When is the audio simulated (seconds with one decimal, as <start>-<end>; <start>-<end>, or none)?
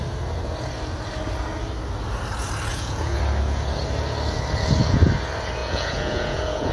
2.7-3.2; 5.6-6.7